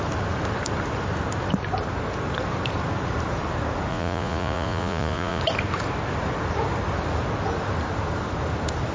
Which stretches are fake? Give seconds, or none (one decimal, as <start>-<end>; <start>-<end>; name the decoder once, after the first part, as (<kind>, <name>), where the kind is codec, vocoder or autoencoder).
3.9-5.4 (vocoder, Vocos)